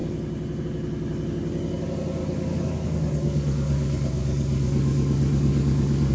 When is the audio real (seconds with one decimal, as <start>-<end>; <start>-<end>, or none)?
0.0-2.2